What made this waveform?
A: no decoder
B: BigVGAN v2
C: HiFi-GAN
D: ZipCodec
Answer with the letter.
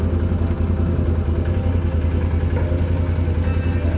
A